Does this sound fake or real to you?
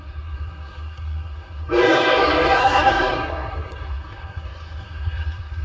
fake